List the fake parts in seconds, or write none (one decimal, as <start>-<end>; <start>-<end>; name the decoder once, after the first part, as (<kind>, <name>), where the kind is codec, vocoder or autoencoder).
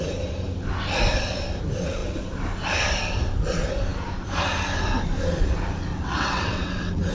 5.9-7.1 (vocoder, WaveNeXt)